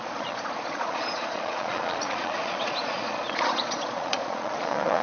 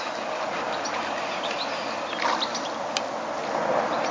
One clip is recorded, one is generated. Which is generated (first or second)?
first